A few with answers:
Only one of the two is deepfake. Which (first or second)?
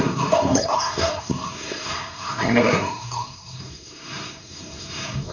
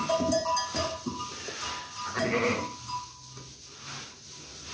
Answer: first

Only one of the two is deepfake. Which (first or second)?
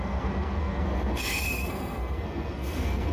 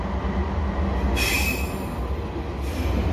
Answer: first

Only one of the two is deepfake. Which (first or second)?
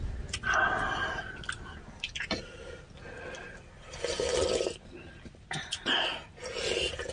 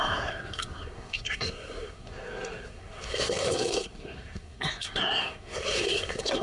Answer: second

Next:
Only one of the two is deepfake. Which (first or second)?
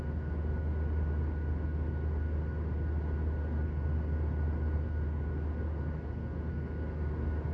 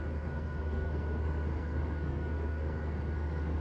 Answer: second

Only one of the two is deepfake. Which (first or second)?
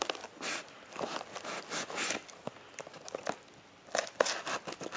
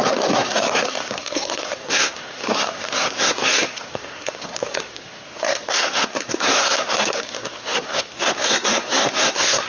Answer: second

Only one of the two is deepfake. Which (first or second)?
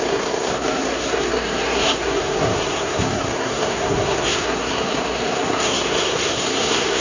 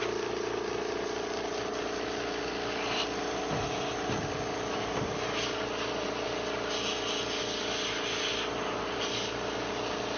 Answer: first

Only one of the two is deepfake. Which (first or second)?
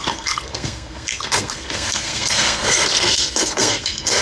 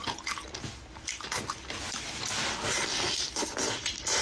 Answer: first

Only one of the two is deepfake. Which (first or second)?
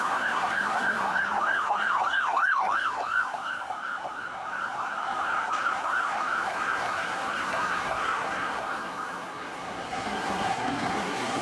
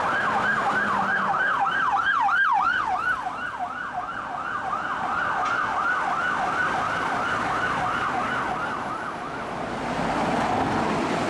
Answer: first